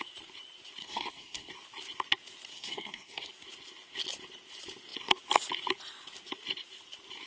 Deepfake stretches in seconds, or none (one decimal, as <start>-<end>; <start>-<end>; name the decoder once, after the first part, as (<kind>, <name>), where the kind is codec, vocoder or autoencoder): 0.8-1.5 (codec, SNAC); 2.5-3.3